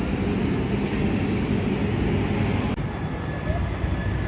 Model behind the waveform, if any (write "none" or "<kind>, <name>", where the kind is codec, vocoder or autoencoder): none